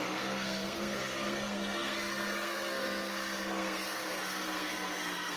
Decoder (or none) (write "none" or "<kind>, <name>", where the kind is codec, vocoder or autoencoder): codec, SNAC